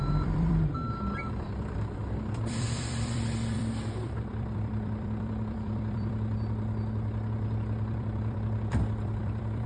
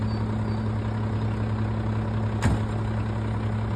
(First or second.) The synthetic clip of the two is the first